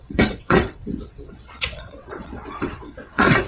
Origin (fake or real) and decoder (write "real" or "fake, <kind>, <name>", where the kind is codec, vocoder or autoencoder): fake, vocoder, WaveNeXt